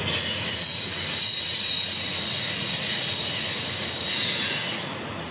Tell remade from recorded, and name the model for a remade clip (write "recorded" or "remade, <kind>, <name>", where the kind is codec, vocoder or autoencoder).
remade, vocoder, Vocos